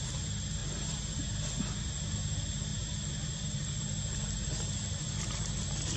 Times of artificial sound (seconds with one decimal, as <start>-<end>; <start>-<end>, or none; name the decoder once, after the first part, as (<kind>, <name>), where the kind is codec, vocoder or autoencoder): none